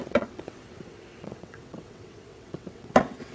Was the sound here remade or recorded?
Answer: remade